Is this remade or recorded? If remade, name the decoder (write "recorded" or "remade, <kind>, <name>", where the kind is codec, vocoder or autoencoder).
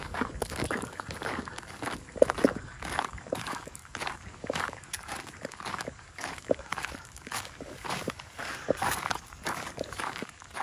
remade, codec, DAC